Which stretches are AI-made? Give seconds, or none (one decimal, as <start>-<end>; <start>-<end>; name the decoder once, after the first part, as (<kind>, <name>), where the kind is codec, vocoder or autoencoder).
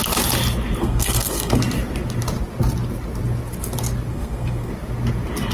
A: 0.8-1.6 (codec, SNAC); 4.1-4.7